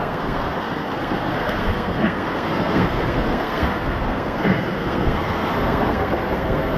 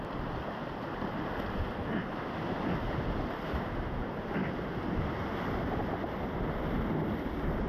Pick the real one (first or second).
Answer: second